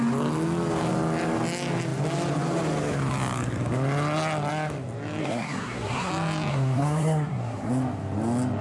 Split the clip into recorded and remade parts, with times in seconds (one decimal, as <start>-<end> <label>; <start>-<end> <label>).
0.0-5.2 recorded; 5.2-6.1 remade; 6.1-6.5 recorded; 6.5-7.7 remade; 7.7-8.6 recorded